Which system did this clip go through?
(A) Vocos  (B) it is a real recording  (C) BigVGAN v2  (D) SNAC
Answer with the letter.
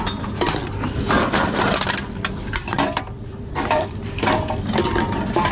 C